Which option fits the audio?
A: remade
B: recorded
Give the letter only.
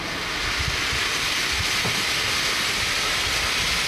B